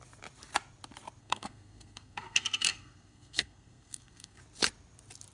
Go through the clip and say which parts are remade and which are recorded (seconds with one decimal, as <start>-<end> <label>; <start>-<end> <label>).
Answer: 0.0-1.2 recorded; 1.2-4.4 remade; 4.4-5.3 recorded